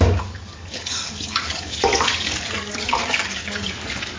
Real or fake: fake